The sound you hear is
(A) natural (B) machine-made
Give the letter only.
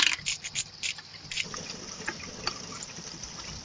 A